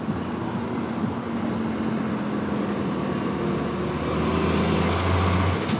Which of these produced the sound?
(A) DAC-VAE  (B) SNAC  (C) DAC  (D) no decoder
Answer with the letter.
D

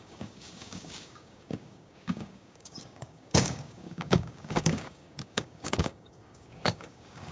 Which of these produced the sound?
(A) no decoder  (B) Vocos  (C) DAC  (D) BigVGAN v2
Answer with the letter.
C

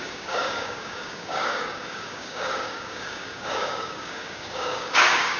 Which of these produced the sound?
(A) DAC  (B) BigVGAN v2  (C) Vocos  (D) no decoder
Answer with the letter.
A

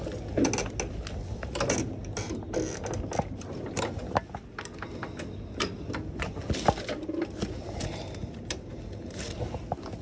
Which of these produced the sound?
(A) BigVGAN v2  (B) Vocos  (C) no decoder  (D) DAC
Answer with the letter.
C